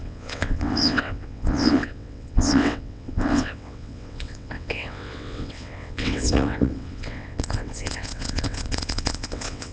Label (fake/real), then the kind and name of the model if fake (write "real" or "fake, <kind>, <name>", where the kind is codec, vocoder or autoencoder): fake, vocoder, WaveNeXt